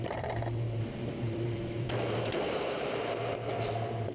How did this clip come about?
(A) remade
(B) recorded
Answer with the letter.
A